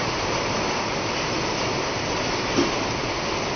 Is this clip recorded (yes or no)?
yes